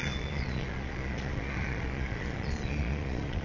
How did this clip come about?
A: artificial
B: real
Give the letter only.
A